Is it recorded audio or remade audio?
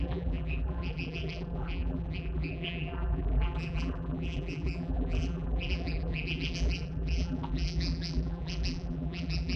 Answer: remade